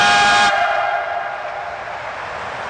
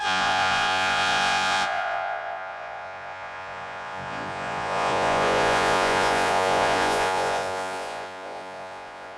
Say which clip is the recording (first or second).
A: first